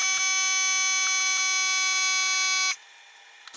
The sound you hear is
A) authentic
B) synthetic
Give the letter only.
A